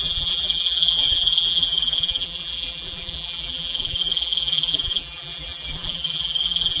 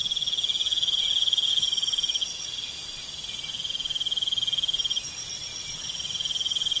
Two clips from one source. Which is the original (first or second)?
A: second